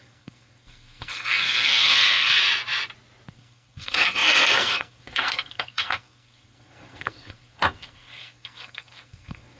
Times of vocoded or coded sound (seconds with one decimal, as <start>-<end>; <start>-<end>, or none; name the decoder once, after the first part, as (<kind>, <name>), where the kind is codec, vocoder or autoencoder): 0.0-2.4 (codec, SNAC); 3.3-9.6

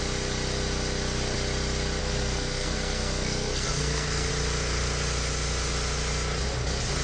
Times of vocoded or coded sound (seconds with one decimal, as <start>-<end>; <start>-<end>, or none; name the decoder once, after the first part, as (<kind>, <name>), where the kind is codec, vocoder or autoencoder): 2.0-4.3 (codec, SNAC)